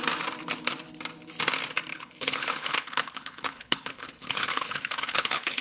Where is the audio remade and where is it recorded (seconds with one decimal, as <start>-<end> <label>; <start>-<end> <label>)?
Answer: 0.0-1.9 recorded; 1.9-5.6 remade